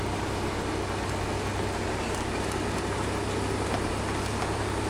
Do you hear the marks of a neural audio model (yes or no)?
no